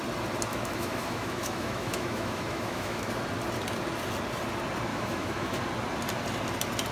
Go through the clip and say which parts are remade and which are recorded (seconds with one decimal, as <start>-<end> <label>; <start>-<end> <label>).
0.0-0.5 recorded; 0.5-3.1 remade; 3.1-4.9 recorded; 4.9-5.6 remade; 5.6-6.9 recorded